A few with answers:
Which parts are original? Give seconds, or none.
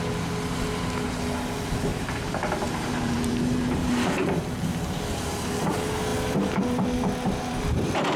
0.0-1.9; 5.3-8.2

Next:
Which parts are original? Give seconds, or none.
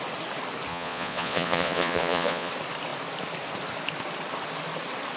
0.0-0.7; 2.5-5.2